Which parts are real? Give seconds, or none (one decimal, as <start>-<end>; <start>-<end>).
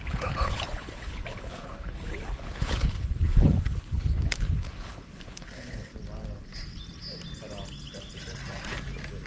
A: 5.9-9.3